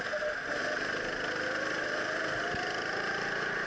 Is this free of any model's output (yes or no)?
yes